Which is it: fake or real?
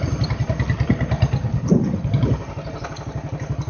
real